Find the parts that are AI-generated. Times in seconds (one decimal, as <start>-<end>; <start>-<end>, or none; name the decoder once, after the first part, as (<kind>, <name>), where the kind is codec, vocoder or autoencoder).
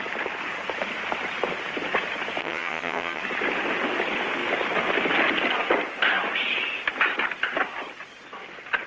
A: 2.4-3.2 (vocoder, HiFi-GAN)